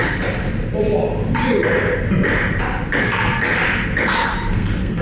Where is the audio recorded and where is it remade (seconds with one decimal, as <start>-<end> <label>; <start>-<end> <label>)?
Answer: 0.0-3.0 recorded; 3.0-3.5 remade; 3.5-4.1 recorded; 4.1-5.0 remade